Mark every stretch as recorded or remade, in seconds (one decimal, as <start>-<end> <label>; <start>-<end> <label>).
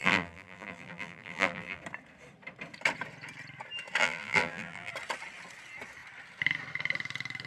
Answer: 0.0-1.8 remade; 1.8-4.0 recorded; 4.0-4.9 remade; 4.9-7.5 recorded